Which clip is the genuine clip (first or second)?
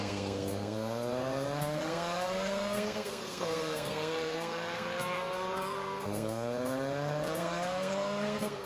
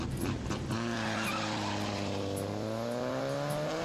second